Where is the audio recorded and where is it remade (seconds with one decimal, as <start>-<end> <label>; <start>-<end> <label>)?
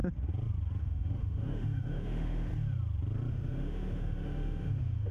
0.0-0.8 recorded; 0.8-2.5 remade; 2.5-3.3 recorded; 3.3-5.1 remade